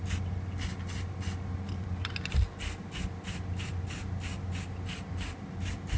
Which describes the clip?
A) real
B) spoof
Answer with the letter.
A